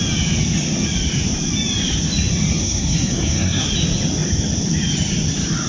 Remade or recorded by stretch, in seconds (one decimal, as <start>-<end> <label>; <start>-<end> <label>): 0.0-2.6 recorded; 2.6-3.7 remade; 3.7-5.7 recorded